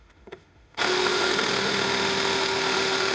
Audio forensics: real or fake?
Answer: fake